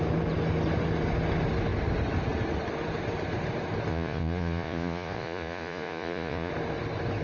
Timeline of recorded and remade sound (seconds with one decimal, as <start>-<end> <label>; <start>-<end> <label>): 0.0-3.9 recorded; 3.9-6.5 remade; 6.5-7.2 recorded

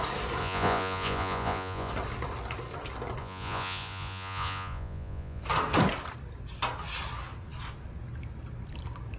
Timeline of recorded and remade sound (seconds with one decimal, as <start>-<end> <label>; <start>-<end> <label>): 0.0-0.4 recorded; 0.4-1.9 remade; 1.9-3.2 recorded; 3.2-5.4 remade; 5.4-9.2 recorded

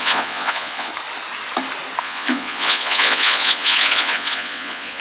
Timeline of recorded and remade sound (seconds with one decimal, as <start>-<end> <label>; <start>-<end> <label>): 0.0-0.9 remade; 0.9-2.0 recorded; 2.0-5.0 remade

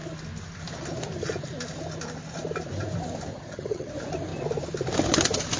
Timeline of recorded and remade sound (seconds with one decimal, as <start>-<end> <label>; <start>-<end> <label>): 0.0-3.3 recorded; 3.3-3.9 remade; 3.9-5.6 recorded

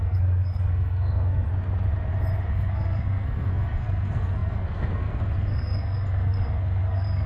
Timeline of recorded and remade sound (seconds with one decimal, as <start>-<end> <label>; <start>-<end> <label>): 0.0-1.5 remade; 1.5-2.5 recorded; 2.5-7.3 remade